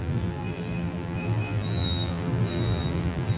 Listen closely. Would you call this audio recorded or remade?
remade